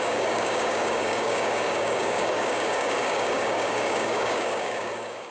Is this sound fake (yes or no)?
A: yes